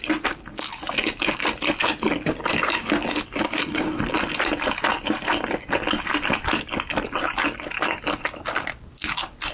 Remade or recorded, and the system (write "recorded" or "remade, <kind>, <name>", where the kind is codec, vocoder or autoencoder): recorded